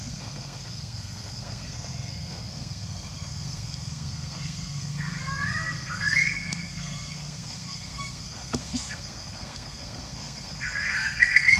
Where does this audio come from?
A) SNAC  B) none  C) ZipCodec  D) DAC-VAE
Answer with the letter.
A